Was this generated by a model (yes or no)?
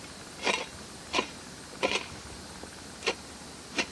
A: no